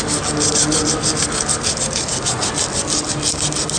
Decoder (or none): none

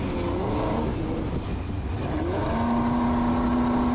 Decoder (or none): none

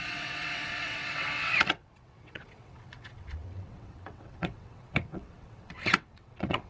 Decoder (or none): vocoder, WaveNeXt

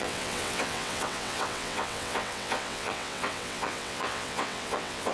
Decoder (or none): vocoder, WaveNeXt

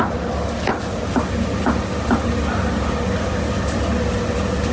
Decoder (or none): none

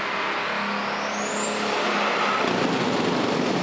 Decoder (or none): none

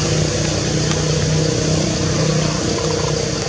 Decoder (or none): none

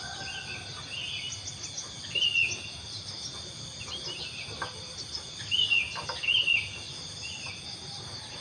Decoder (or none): none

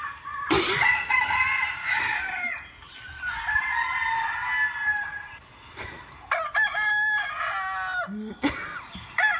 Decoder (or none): none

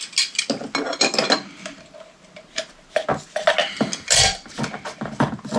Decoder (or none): none